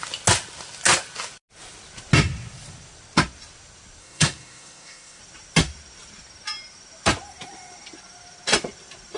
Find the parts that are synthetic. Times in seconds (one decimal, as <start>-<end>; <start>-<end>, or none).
4.0-5.2